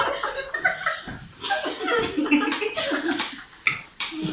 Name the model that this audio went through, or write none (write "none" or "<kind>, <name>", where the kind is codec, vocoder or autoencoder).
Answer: none